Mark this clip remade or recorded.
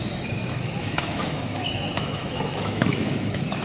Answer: remade